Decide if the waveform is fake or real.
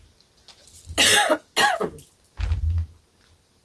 real